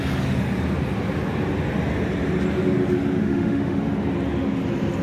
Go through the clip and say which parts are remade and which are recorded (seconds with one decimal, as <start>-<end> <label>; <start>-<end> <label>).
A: 0.0-3.2 recorded; 3.2-3.9 remade; 3.9-5.0 recorded